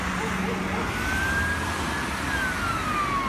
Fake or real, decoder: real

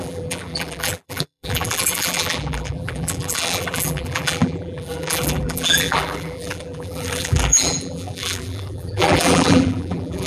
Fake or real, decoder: fake, vocoder, BigVGAN v2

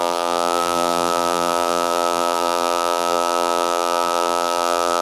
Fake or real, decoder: fake, vocoder, BigVGAN v2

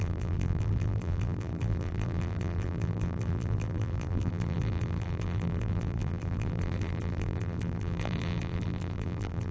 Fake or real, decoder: fake, vocoder, BigVGAN v2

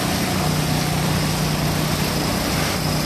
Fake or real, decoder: real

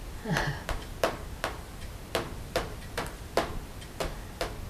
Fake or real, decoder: real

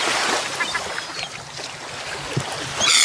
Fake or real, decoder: real